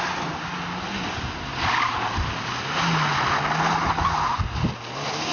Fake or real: real